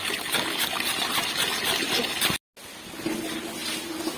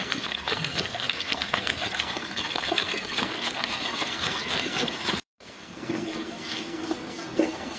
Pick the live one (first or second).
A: first